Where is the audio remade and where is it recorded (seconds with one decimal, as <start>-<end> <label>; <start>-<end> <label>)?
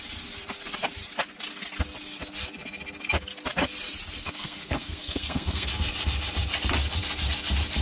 0.0-4.2 recorded; 4.2-5.7 remade; 5.7-7.8 recorded